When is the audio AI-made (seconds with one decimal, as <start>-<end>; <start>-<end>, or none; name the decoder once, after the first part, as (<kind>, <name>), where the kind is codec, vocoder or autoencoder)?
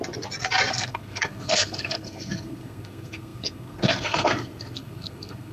0.7-5.5 (codec, SNAC)